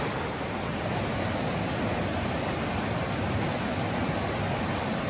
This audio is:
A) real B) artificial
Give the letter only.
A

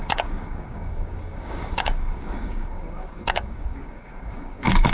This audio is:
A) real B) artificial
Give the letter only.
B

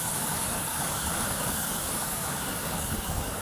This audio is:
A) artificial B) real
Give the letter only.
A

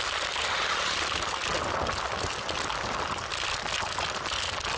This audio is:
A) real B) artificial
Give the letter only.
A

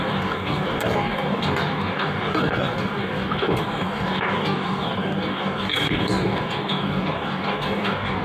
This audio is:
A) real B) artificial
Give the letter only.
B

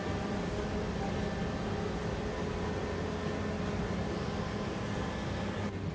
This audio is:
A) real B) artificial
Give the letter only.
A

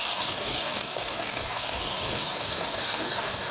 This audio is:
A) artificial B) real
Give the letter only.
A